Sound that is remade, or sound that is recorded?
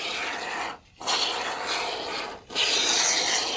recorded